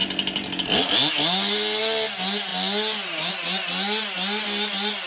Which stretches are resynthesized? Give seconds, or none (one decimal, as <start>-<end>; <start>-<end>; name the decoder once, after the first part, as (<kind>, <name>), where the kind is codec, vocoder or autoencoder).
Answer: none